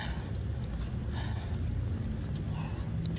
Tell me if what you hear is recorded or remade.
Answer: recorded